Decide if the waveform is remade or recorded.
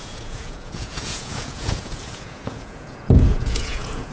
remade